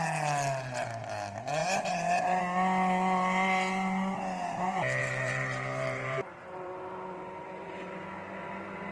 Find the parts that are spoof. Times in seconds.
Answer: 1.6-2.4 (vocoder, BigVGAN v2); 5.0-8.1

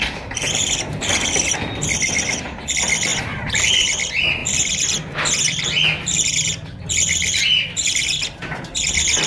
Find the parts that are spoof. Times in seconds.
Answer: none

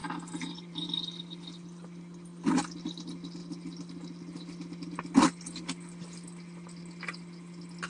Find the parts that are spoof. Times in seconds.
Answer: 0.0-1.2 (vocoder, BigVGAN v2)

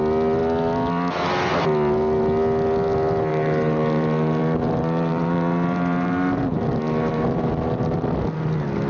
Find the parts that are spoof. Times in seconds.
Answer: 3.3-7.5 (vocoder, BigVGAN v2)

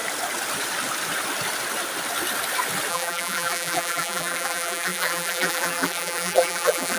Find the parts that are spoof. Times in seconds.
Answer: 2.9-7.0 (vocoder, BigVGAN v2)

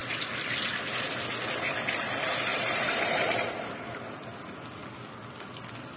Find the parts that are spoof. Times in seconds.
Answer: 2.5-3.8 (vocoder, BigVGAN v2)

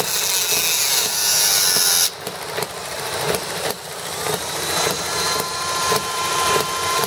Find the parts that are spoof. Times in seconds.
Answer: 2.8-7.1 (vocoder, BigVGAN v2)